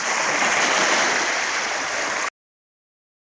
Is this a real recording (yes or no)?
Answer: yes